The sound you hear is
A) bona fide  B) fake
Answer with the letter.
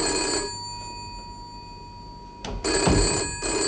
A